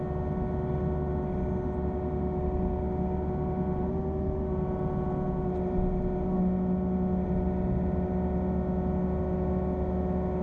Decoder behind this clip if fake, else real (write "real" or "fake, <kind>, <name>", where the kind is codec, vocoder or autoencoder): real